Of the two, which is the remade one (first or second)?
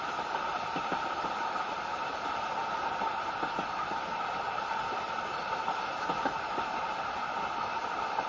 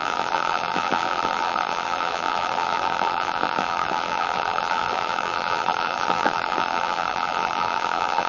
second